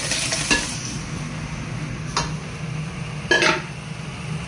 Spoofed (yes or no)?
no